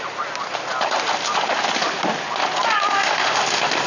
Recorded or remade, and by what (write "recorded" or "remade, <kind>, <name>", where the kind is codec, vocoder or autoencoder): recorded